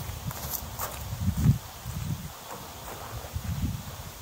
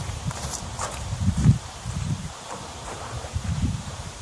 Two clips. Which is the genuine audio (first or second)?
first